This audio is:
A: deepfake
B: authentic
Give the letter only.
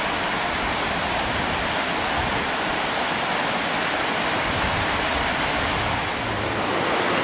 B